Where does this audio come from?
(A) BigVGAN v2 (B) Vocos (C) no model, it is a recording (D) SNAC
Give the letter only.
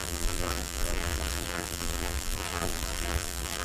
A